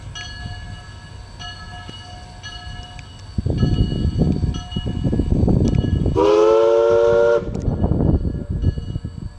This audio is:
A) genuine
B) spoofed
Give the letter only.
A